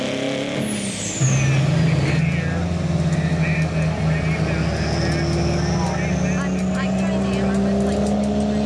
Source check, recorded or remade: recorded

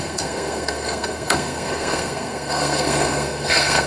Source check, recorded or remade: remade